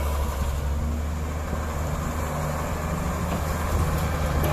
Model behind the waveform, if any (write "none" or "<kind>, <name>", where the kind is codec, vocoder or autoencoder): none